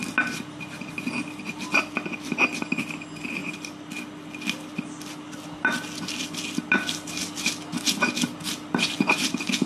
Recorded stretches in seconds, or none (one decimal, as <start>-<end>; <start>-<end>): 0.0-9.7